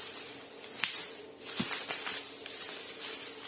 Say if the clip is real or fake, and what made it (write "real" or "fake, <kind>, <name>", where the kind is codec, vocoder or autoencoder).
fake, vocoder, BigVGAN v2